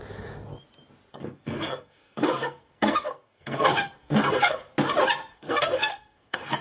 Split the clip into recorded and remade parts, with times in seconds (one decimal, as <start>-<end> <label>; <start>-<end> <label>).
0.0-1.1 recorded; 1.1-4.7 remade; 4.7-5.3 recorded; 5.3-6.6 remade